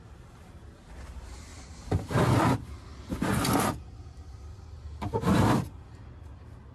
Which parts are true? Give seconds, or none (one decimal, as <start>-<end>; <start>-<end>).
0.0-6.7